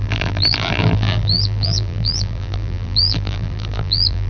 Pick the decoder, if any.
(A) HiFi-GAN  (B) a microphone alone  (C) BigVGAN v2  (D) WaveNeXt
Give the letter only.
C